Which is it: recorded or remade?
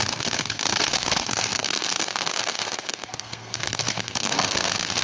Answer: remade